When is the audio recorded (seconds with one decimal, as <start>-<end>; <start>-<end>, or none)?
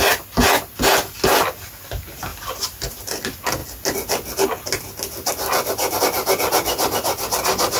0.0-7.8